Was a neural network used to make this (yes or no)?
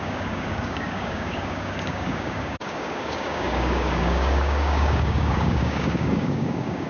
yes